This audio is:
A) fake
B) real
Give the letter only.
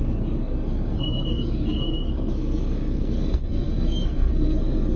A